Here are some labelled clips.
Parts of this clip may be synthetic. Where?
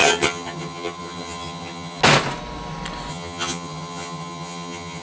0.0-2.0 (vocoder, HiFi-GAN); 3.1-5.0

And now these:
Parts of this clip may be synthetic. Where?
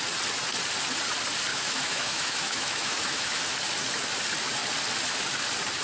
1.5-3.4 (autoencoder, DAC-VAE)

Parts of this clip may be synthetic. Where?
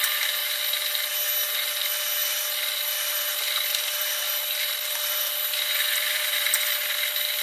0.4-1.1 (vocoder, BigVGAN v2); 2.2-6.6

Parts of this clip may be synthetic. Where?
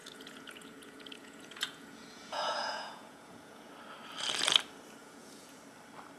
0.0-3.7 (vocoder, Vocos); 5.0-5.6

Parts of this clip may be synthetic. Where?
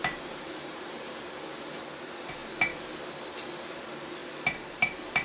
0.0-1.9 (vocoder, BigVGAN v2)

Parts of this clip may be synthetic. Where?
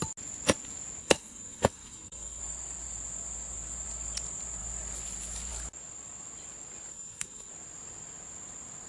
1.0-2.4 (codec, SNAC); 6.9-7.5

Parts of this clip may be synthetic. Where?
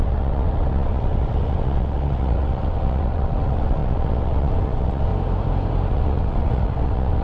0.0-5.1 (vocoder, WaveNeXt); 5.9-7.2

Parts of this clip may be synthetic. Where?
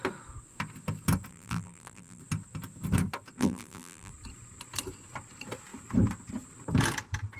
1.3-2.2 (vocoder, BigVGAN v2); 3.4-4.1